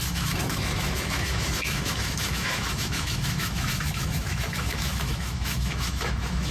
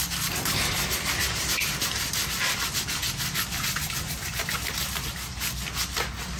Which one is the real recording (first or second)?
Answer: second